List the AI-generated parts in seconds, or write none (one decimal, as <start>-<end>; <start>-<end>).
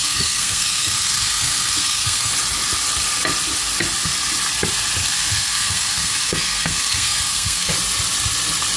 0.0-2.3; 5.0-7.7